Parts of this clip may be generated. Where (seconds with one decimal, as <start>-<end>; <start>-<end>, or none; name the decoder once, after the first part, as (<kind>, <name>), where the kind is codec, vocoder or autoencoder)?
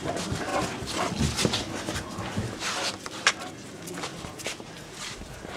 0.0-0.5 (vocoder, BigVGAN v2); 3.3-5.6